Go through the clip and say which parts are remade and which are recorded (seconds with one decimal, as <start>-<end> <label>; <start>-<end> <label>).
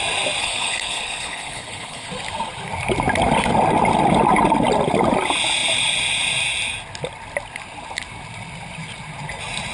0.0-0.4 recorded; 0.4-2.1 remade; 2.1-9.7 recorded